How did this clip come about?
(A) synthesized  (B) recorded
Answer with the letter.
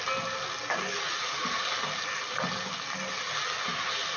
B